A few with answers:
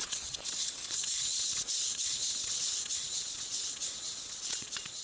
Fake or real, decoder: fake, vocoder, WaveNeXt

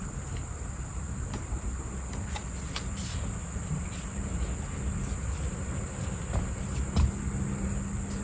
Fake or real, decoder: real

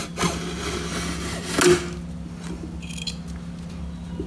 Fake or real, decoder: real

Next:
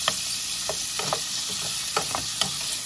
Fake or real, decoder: real